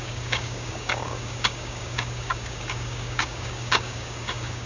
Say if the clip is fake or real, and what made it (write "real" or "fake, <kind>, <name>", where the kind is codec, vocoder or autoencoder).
fake, codec, DAC